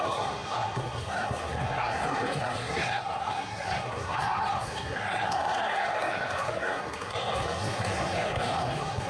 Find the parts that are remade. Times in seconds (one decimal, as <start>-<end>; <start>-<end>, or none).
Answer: 0.0-9.1